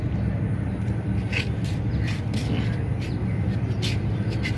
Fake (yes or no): no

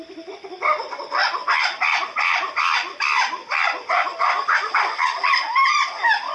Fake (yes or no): yes